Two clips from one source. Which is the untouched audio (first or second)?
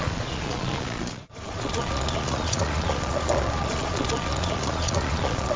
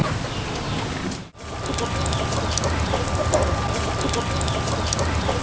second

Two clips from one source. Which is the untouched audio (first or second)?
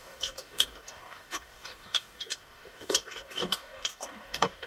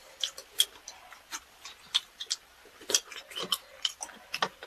second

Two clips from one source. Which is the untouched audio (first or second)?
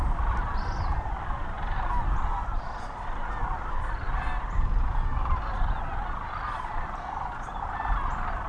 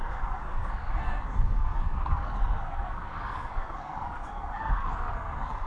first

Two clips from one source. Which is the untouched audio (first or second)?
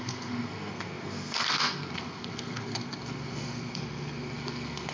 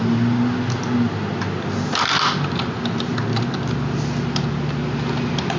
second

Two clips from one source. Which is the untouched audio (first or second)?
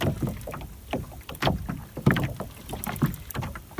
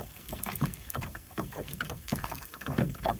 first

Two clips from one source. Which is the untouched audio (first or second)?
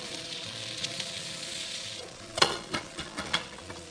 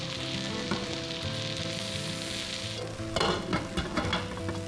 second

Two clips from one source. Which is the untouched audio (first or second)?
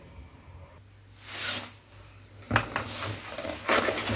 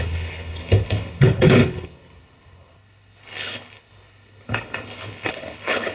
first